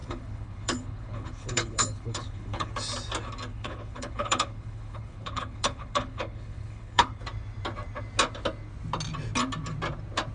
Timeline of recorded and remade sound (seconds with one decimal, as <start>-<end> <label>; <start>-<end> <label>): 0.0-2.7 remade; 2.7-3.5 recorded; 3.5-7.2 remade; 7.2-10.3 recorded